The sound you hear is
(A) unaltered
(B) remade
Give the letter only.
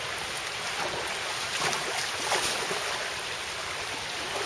A